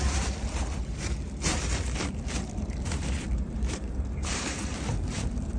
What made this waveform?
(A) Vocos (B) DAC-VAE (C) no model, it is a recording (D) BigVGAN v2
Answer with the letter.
D